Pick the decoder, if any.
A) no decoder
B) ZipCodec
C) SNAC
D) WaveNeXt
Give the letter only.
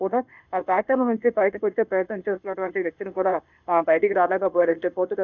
B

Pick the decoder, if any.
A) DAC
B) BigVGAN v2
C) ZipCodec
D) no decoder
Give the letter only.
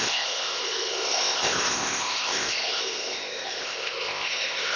C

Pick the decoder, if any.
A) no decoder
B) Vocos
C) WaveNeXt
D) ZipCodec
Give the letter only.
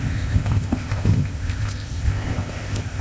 D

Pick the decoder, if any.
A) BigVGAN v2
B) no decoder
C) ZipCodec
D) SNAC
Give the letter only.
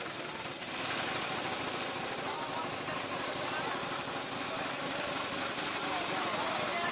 B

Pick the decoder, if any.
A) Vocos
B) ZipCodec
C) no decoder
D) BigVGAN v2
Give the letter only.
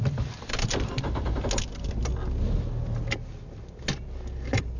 C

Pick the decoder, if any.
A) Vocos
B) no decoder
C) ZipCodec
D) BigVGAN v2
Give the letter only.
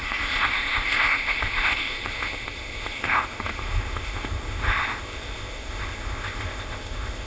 C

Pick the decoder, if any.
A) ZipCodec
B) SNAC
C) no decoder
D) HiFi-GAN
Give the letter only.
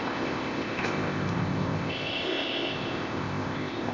A